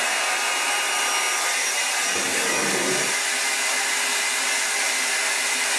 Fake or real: real